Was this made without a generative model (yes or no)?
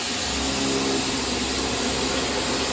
yes